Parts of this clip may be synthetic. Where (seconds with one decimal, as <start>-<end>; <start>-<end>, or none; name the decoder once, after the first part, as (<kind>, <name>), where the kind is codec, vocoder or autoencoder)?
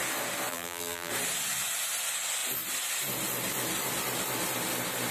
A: 0.5-1.1 (vocoder, BigVGAN v2)